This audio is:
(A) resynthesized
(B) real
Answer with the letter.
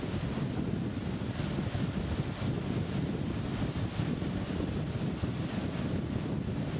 B